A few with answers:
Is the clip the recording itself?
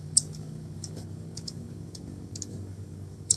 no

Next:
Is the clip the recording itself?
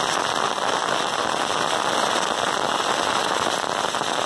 yes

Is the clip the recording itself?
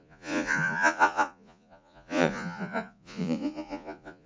no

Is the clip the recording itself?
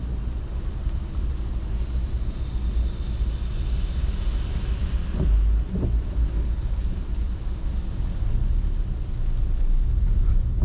yes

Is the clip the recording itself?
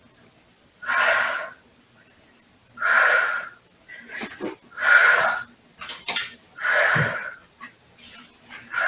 no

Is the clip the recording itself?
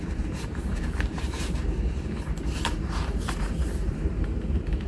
no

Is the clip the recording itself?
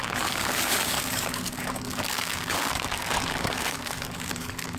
no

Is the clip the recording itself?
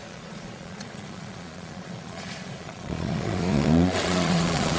no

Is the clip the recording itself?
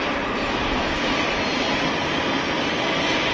yes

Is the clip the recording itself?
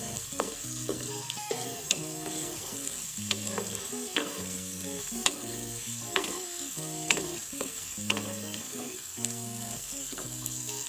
no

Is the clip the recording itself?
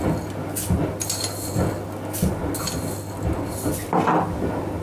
yes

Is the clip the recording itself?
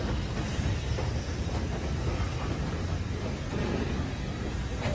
yes